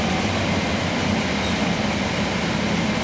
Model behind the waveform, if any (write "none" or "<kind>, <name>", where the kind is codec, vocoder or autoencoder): none